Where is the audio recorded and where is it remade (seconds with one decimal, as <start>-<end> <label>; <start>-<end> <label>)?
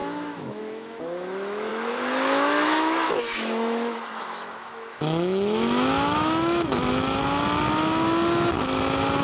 0.0-7.2 remade; 7.2-9.2 recorded